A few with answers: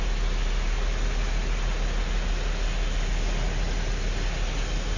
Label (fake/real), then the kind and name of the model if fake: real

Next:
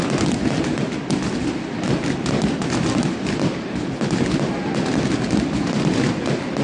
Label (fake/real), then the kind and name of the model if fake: real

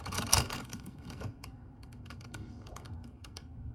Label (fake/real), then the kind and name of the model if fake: fake, codec, SNAC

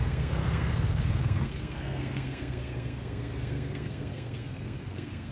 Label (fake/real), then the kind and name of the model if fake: fake, codec, SNAC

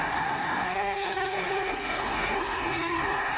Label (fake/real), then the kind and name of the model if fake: fake, codec, SNAC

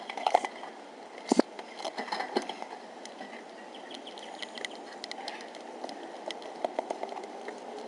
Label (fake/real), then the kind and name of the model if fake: real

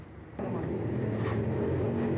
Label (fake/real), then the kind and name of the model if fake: real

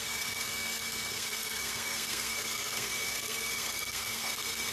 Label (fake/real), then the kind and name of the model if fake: fake, codec, SNAC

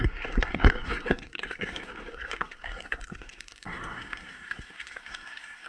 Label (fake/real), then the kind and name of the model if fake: fake, codec, SNAC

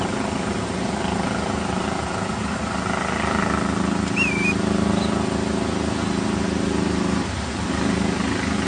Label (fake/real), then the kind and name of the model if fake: real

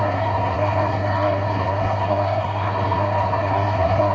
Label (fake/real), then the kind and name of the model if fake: fake, codec, SNAC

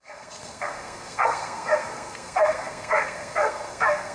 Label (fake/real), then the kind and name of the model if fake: fake, codec, SNAC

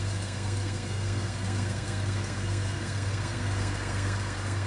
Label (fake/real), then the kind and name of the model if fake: fake, codec, SNAC